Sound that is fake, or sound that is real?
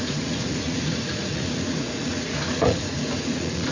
fake